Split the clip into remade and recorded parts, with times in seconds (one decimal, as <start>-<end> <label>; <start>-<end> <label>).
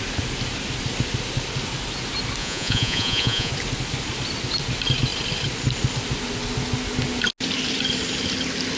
0.0-2.4 recorded; 2.4-3.5 remade; 3.5-8.8 recorded